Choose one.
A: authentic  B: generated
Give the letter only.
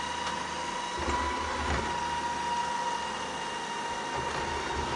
A